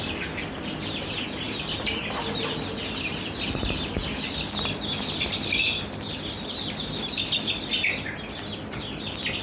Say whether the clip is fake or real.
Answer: real